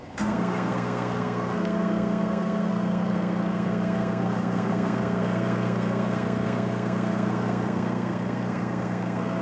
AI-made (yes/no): yes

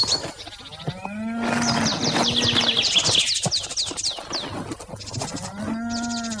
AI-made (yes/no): no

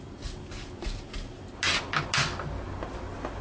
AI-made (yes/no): no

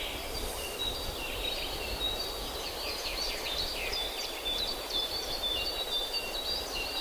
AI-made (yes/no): yes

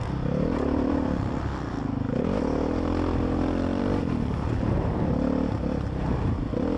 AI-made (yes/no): no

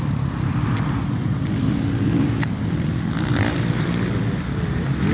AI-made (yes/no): yes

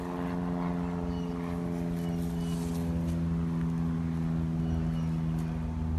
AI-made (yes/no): no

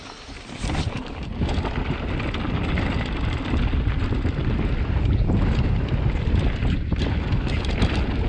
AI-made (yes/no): no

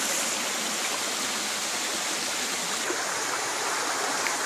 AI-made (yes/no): no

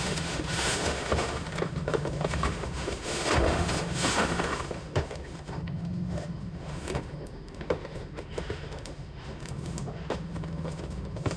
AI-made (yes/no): yes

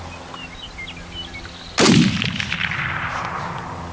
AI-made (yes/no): no